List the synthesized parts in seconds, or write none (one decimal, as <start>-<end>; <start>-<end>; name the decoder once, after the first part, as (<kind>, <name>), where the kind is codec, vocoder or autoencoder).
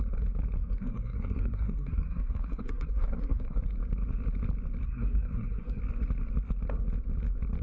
0.6-3.6 (codec, SNAC); 4.8-5.8